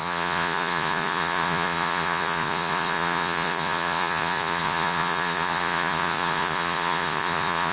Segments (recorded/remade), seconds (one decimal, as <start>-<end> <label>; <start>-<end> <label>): 0.0-7.7 remade